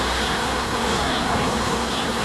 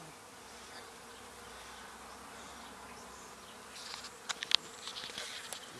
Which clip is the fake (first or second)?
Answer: first